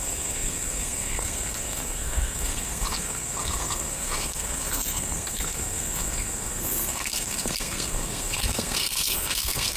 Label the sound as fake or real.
fake